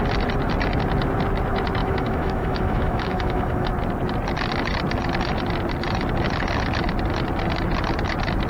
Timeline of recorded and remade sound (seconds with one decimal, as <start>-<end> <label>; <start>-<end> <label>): 0.0-1.8 recorded; 1.8-3.7 remade; 3.7-8.5 recorded